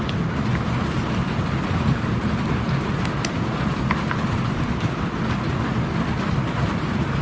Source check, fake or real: real